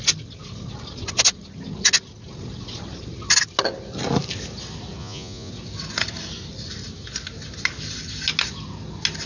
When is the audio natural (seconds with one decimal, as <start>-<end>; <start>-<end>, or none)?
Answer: 0.0-5.0; 5.5-9.3